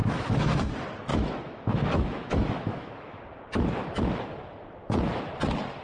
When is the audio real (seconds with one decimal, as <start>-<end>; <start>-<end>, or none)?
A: 0.7-1.1; 3.2-5.8